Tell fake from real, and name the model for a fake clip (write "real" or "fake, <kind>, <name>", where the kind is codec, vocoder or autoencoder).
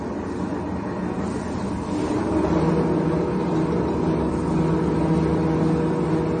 real